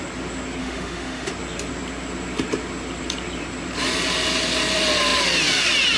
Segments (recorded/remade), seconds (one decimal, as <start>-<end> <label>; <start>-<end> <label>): 0.0-0.6 recorded; 0.6-1.3 remade; 1.3-6.0 recorded